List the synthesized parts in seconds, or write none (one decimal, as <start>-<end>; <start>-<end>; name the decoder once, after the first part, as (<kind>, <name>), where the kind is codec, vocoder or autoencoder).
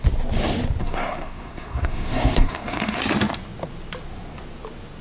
0.8-3.0 (codec, SNAC)